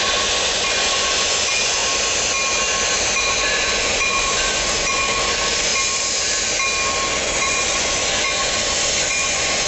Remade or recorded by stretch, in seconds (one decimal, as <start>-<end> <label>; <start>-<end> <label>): 0.0-1.8 remade; 1.8-3.2 recorded; 3.2-5.7 remade; 5.7-7.1 recorded; 7.1-9.7 remade

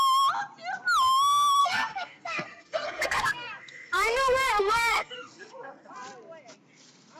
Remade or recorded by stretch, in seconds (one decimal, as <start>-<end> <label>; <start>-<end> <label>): 0.0-1.6 recorded; 1.6-5.9 remade; 5.9-7.2 recorded

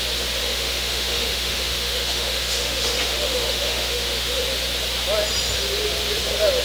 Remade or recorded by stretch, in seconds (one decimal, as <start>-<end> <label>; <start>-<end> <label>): 0.0-0.4 recorded; 0.4-4.4 remade; 4.4-6.6 recorded

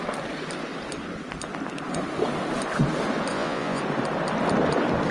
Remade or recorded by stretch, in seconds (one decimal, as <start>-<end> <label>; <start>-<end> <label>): 0.0-3.3 recorded; 3.3-3.8 remade; 3.8-5.1 recorded

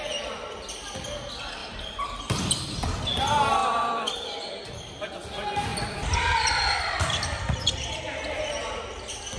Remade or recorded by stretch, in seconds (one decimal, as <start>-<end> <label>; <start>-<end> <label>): 0.0-1.6 recorded; 1.6-2.2 remade; 2.2-3.6 recorded; 3.6-4.7 remade; 4.7-5.7 recorded; 5.7-7.4 remade; 7.4-9.4 recorded

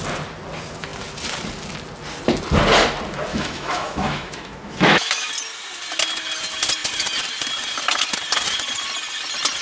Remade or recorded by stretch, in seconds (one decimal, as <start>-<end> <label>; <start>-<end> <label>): 0.0-3.3 recorded; 3.3-5.3 remade; 5.3-9.6 recorded